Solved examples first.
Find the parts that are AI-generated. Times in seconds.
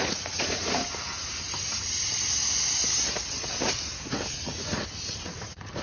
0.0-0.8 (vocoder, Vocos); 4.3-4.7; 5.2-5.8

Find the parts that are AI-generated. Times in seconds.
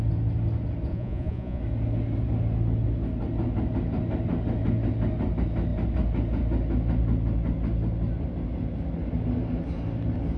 0.9-1.6 (vocoder, Vocos)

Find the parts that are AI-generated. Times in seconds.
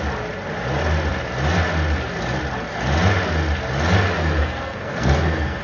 4.4-5.6 (codec, SNAC)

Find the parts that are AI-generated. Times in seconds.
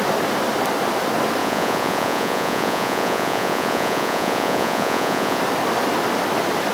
1.4-5.4 (vocoder, Vocos)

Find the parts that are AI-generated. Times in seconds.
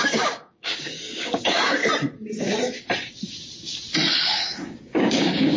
0.0-1.8 (codec, DAC); 4.2-5.6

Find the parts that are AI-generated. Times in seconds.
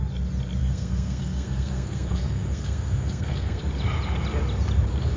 0.6-3.6 (codec, SNAC)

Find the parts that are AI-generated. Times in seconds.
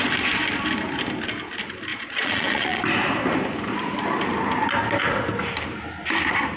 1.9-2.8 (vocoder, Vocos)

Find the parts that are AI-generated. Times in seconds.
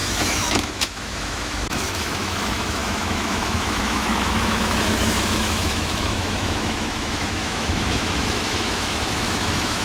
0.0-9.8 (autoencoder, DAC-VAE)